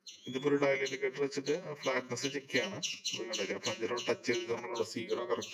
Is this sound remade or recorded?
remade